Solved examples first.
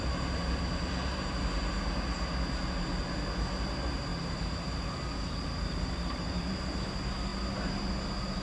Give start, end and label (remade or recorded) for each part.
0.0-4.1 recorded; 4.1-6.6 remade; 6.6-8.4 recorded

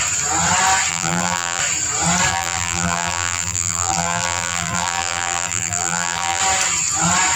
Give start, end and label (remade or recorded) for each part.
0.0-0.9 recorded; 0.9-1.6 remade; 1.6-2.3 recorded; 2.3-6.4 remade; 6.4-7.4 recorded